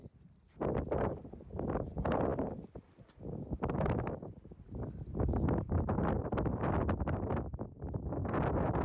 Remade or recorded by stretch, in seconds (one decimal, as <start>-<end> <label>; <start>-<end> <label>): 0.0-8.8 recorded